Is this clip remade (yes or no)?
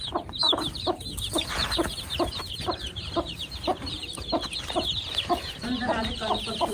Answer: yes